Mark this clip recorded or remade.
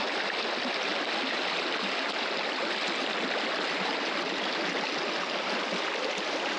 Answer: recorded